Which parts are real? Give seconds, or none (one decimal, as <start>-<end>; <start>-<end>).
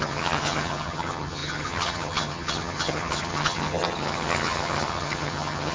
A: none